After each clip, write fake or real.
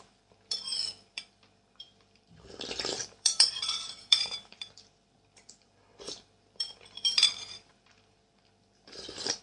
fake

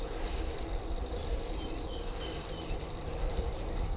real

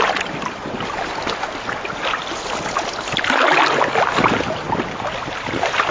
real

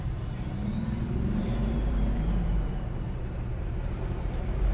fake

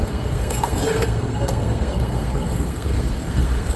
fake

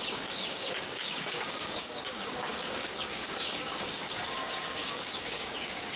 fake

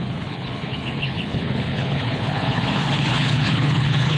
fake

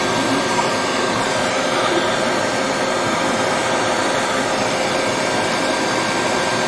fake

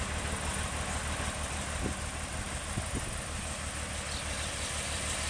real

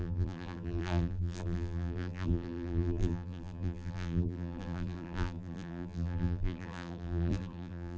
fake